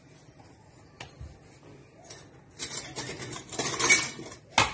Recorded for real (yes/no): yes